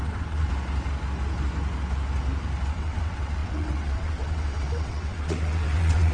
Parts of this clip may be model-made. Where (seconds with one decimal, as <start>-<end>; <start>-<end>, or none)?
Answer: 0.0-0.5; 2.7-6.1